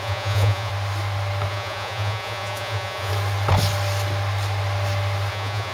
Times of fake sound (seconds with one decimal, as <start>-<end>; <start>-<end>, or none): 0.0-0.7; 1.5-3.1; 5.3-5.7

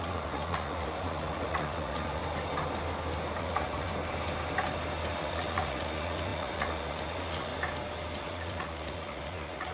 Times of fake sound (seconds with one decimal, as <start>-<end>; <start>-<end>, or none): 0.0-2.2; 3.4-3.9; 5.2-7.5; 8.2-9.7